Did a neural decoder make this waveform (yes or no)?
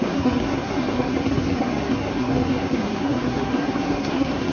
yes